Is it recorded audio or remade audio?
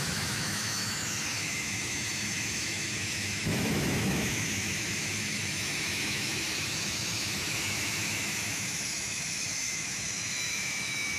remade